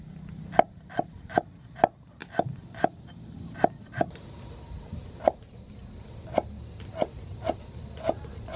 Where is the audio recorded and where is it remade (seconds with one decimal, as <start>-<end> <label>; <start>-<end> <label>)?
0.0-8.6 recorded